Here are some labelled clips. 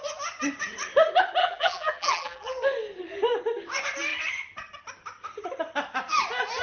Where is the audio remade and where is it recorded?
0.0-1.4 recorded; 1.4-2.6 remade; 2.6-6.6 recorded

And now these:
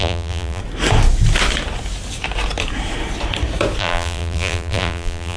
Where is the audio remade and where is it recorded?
0.0-0.6 remade; 0.6-3.8 recorded; 3.8-5.4 remade

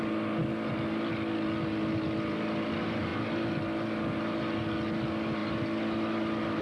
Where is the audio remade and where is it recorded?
0.0-3.1 recorded; 3.1-3.6 remade; 3.6-6.6 recorded

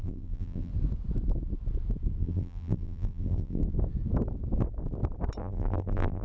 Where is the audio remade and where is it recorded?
0.0-0.7 remade; 0.7-2.2 recorded; 2.2-3.6 remade; 3.6-5.4 recorded; 5.4-6.2 remade

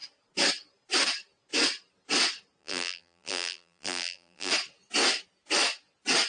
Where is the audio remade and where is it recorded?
0.0-2.6 recorded; 2.6-4.5 remade; 4.5-6.3 recorded